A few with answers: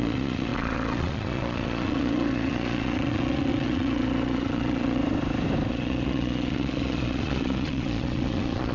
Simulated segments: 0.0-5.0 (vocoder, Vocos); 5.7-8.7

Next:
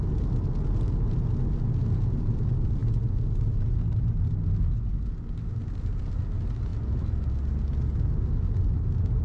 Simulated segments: none

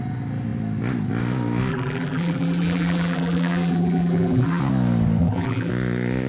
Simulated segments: 1.7-4.6 (vocoder, BigVGAN v2); 5.2-5.7